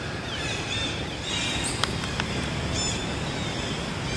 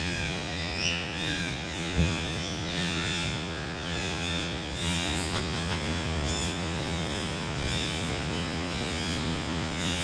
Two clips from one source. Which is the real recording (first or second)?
first